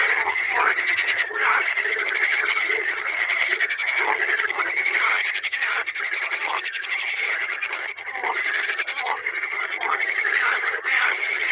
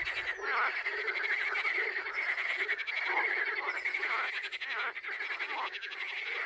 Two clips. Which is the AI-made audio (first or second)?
first